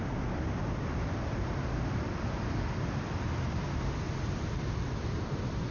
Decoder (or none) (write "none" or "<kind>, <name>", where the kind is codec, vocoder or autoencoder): none